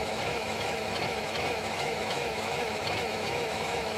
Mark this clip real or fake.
fake